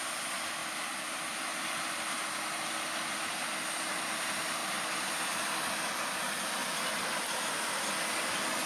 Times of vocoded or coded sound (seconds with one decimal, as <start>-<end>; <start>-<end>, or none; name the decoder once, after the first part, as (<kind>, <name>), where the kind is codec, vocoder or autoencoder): 4.6-5.5 (vocoder, BigVGAN v2)